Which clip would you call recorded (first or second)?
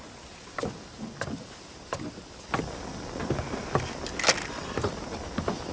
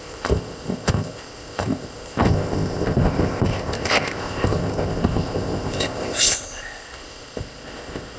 first